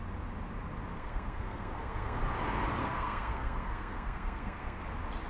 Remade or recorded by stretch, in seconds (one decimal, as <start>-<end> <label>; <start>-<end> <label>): 0.0-0.9 recorded; 0.9-2.2 remade; 2.2-2.8 recorded; 2.8-4.8 remade; 4.8-5.3 recorded